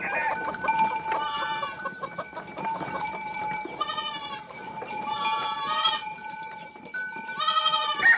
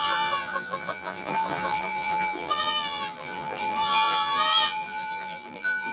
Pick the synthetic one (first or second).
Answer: second